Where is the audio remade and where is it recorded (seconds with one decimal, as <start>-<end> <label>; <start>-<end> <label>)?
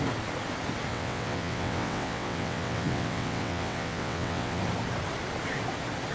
0.0-0.9 recorded; 0.9-4.6 remade; 4.6-6.1 recorded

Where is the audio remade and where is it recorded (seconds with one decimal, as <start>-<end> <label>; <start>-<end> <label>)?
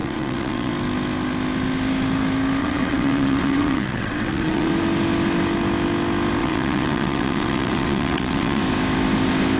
0.0-0.7 remade; 0.7-2.6 recorded; 2.6-4.7 remade; 4.7-6.4 recorded; 6.4-8.6 remade; 8.6-9.6 recorded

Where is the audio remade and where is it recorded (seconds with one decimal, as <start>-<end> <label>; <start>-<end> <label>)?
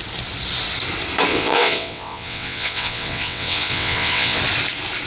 0.0-1.3 recorded; 1.3-4.4 remade; 4.4-5.1 recorded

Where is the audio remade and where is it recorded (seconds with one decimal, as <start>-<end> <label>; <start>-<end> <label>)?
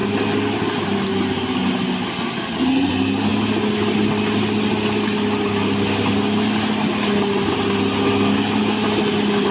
0.0-9.5 recorded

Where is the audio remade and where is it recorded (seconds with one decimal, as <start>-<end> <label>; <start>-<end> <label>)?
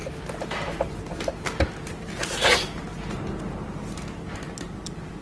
0.0-5.2 recorded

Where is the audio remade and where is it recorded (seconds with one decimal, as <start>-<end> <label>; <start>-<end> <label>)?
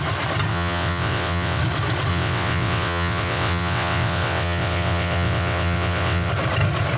0.0-0.5 recorded; 0.5-1.6 remade; 1.6-2.1 recorded; 2.1-6.3 remade; 6.3-7.0 recorded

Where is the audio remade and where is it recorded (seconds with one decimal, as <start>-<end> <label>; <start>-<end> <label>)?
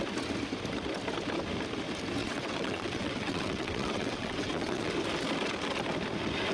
0.0-2.2 recorded; 2.2-4.9 remade; 4.9-6.5 recorded